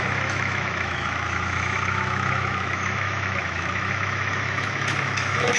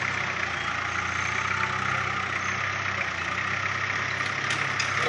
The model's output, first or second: first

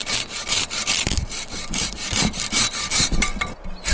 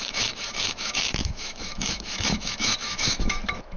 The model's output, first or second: second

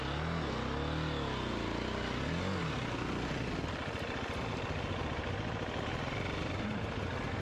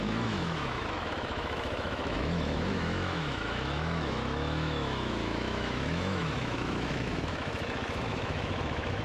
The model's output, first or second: second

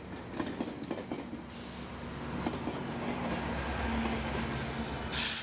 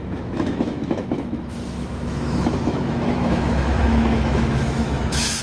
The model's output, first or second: second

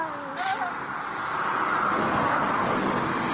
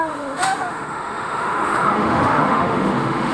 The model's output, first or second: second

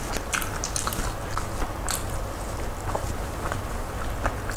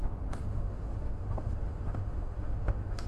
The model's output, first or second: second